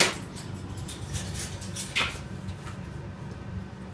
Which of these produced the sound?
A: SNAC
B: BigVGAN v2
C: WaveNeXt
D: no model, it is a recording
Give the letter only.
D